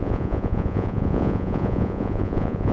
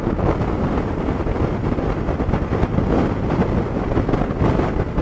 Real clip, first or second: second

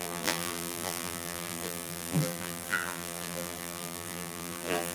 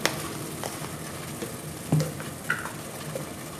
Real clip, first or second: second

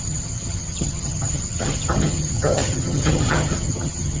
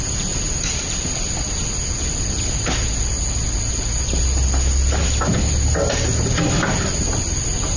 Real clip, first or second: second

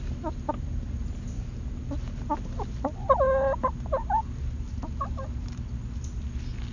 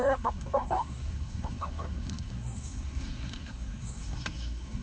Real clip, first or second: first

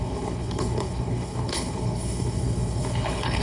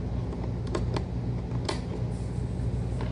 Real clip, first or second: second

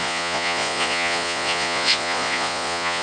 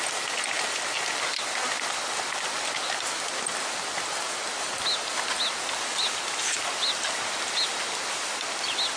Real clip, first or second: second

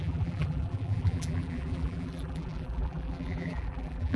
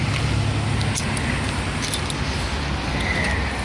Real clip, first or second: second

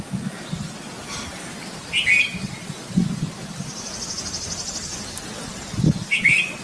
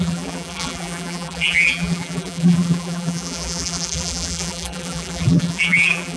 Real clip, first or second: first